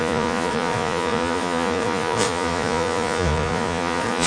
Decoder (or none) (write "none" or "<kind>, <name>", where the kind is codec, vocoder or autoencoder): vocoder, Vocos